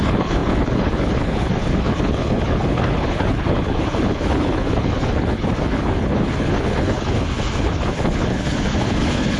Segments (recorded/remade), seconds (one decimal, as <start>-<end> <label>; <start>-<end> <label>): 0.0-9.4 remade